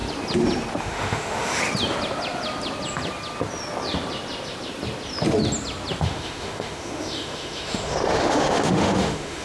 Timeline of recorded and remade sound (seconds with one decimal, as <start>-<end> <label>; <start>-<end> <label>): 0.0-0.8 recorded; 0.8-1.6 remade; 1.6-6.0 recorded; 6.0-9.4 remade